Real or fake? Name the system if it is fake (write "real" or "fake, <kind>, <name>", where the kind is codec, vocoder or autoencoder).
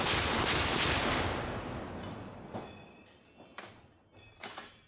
real